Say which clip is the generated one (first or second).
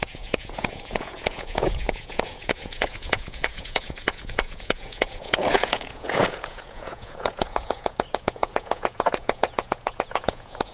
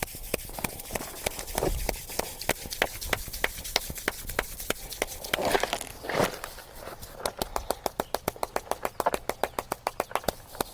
first